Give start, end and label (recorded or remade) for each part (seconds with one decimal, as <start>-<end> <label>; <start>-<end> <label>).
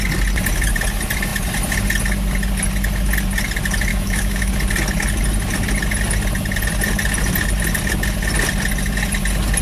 0.0-3.9 recorded; 3.9-4.5 remade; 4.5-9.6 recorded